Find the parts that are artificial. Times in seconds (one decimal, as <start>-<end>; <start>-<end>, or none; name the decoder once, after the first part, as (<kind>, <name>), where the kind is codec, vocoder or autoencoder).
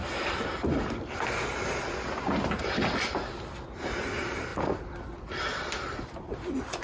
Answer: none